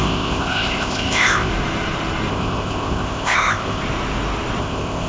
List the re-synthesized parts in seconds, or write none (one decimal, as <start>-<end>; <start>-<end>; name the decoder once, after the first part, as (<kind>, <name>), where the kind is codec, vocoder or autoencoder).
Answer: 0.0-1.5 (codec, ZipCodec); 2.3-3.8; 4.6-5.1